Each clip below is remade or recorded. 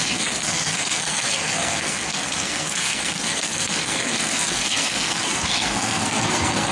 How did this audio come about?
remade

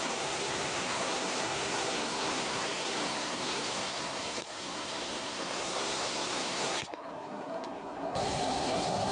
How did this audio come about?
remade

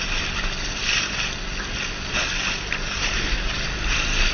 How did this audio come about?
recorded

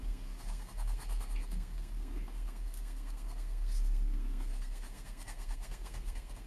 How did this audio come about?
remade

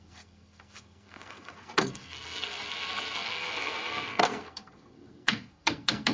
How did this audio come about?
remade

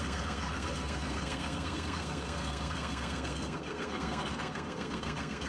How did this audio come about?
remade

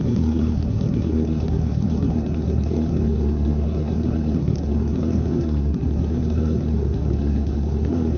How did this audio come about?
remade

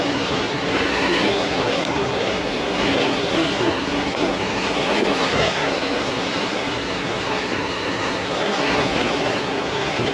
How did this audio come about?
remade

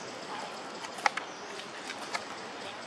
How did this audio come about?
recorded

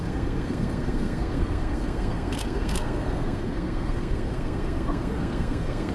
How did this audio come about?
remade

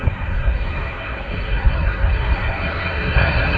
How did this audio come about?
remade